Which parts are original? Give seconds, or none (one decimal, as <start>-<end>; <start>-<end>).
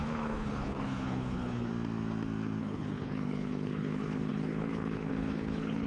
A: 1.7-2.6